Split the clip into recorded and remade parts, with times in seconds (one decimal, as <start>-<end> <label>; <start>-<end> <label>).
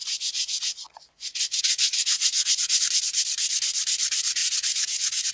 0.0-2.8 remade; 2.8-4.4 recorded; 4.4-5.3 remade